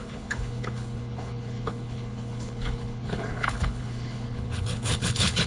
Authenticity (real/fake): fake